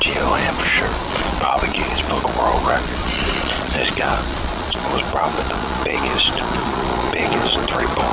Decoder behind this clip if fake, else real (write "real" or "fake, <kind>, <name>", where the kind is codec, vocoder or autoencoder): fake, vocoder, Vocos